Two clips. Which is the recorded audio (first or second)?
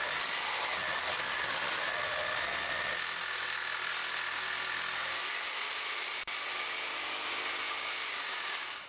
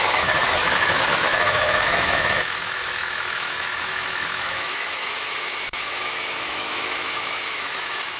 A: first